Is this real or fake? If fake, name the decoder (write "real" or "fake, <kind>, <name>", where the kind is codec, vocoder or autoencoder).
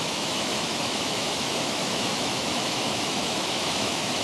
fake, autoencoder, DAC-VAE